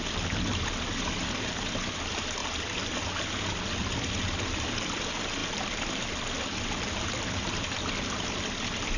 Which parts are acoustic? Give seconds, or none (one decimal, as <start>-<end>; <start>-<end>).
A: 0.0-9.0